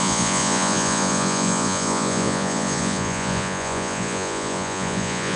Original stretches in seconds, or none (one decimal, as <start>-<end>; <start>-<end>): none